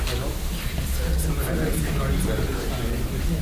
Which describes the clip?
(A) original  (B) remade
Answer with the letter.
A